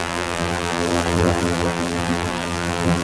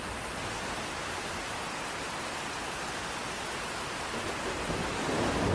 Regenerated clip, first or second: first